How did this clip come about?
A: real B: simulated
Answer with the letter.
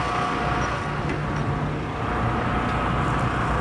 A